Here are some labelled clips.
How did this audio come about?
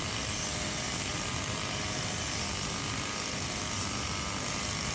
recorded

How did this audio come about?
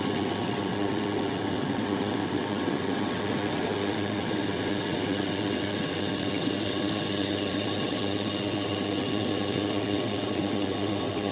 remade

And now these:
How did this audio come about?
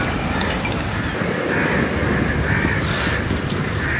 recorded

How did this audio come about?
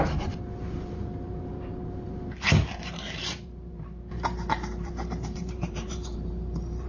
remade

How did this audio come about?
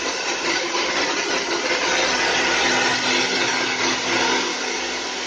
recorded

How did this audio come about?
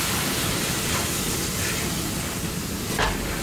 recorded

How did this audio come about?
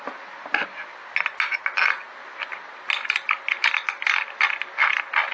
recorded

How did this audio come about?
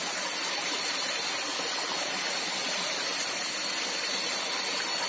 recorded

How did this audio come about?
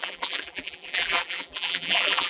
remade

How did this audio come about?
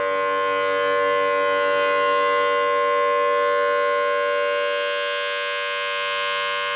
recorded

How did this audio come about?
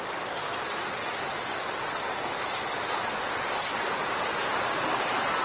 recorded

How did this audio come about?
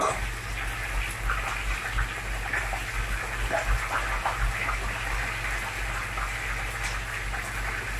recorded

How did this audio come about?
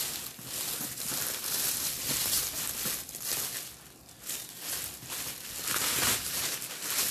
recorded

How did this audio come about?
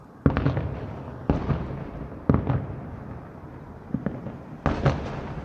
recorded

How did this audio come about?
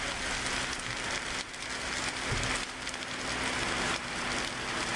recorded